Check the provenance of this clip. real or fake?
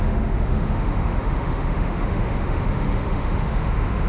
fake